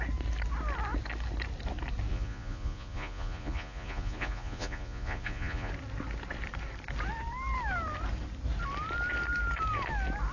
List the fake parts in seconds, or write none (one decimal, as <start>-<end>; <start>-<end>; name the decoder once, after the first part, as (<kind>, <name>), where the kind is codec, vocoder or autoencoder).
2.1-5.7 (vocoder, Vocos)